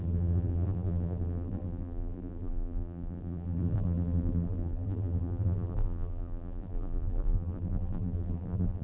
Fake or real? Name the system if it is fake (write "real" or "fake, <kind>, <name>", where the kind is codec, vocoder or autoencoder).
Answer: fake, vocoder, BigVGAN v2